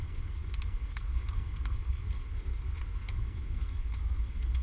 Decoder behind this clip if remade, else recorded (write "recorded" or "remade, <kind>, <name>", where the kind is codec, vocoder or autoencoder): remade, codec, SNAC